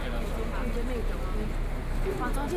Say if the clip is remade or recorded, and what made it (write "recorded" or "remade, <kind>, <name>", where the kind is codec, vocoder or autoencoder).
recorded